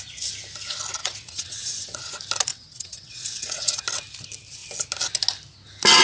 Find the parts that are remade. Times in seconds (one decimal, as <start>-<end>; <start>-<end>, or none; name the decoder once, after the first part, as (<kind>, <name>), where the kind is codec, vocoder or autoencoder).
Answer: 1.0-2.0 (vocoder, WaveNeXt); 2.5-3.8